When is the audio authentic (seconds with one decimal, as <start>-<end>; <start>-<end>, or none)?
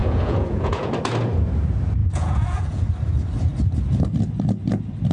0.9-2.0; 2.8-5.1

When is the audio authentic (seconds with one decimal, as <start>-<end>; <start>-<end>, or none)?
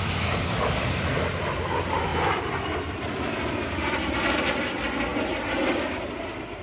0.0-2.1; 4.4-6.6